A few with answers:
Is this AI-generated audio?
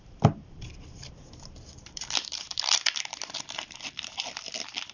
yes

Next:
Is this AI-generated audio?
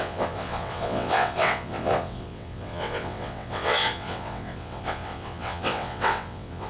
yes